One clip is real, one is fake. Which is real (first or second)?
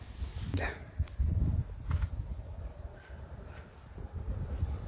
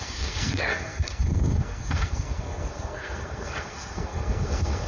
first